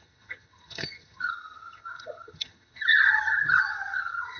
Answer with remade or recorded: remade